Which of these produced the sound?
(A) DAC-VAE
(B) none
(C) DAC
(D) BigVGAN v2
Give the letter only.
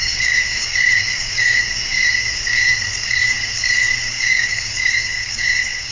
C